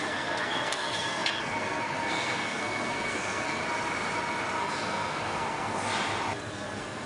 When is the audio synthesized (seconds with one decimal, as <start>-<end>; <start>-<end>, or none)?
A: 0.0-3.6; 4.6-5.9; 6.5-7.1